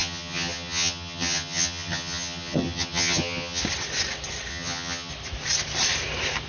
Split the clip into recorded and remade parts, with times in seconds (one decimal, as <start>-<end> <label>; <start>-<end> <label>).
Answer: 0.0-3.6 remade; 3.6-4.5 recorded; 4.5-5.1 remade; 5.1-6.5 recorded